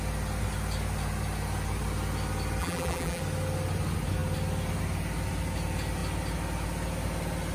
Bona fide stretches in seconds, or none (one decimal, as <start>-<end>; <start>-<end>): 0.0-2.6; 3.2-7.5